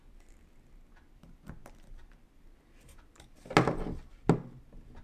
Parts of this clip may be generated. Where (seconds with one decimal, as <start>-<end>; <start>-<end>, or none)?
none

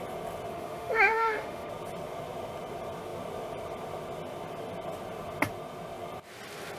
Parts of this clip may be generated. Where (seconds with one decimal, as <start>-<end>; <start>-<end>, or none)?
0.5-1.7

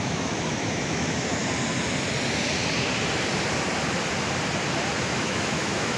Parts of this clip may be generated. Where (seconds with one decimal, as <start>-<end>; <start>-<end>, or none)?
0.0-1.4; 5.0-6.0